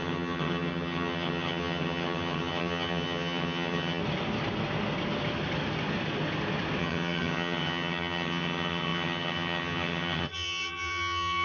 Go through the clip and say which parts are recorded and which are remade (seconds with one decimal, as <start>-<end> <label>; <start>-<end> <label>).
0.0-4.0 remade; 4.0-6.8 recorded; 6.8-11.4 remade